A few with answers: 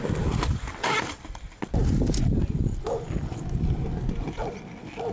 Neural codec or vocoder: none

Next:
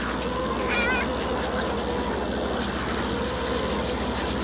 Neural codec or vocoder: none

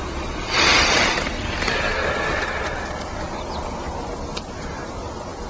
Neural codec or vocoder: none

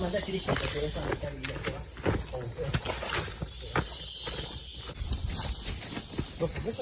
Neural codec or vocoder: none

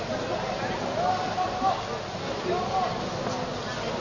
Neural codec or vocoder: none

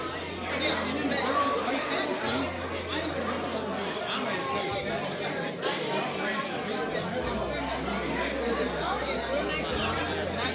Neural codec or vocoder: none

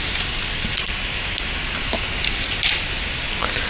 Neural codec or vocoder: none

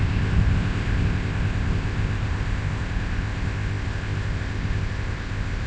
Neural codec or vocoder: codec, ZipCodec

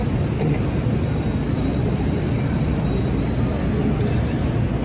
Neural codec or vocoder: none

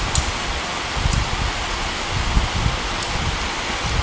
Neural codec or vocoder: none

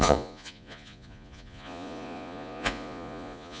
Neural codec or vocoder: vocoder, Vocos